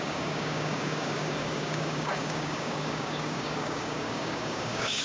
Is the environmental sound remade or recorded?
remade